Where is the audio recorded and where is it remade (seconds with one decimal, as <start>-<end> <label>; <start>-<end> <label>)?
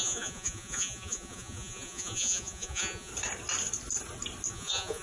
0.0-3.1 remade; 3.1-4.5 recorded; 4.5-5.0 remade